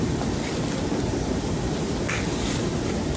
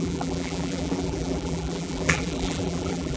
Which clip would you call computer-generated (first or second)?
second